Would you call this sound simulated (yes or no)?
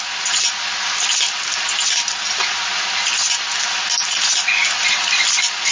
no